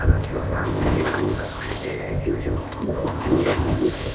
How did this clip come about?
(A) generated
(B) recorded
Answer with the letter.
A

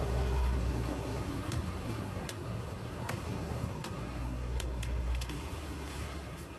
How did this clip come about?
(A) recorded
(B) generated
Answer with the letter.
B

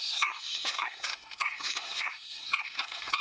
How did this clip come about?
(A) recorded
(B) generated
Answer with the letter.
B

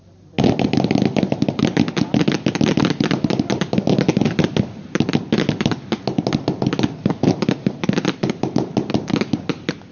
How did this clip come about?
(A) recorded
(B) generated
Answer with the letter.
A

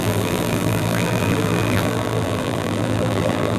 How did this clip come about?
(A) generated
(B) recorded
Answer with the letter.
A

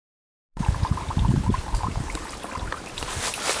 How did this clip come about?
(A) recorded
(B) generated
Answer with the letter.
A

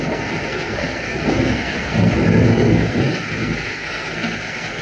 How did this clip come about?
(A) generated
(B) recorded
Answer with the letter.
A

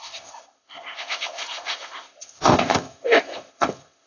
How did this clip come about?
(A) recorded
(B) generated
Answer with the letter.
B